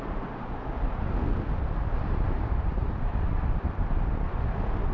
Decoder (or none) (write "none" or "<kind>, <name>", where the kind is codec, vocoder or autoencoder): none